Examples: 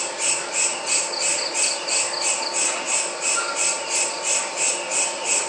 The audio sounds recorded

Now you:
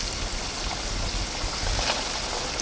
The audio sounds recorded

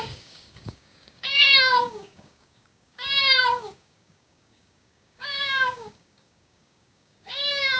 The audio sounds remade